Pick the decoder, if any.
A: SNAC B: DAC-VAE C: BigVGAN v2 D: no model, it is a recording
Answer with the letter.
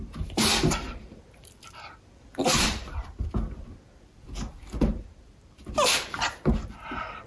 C